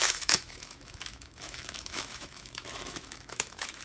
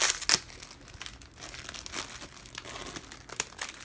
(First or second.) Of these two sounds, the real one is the second